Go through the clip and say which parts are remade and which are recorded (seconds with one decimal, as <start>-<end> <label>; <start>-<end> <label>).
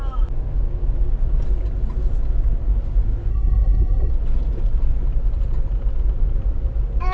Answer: 0.0-3.3 recorded; 3.3-4.1 remade; 4.1-7.1 recorded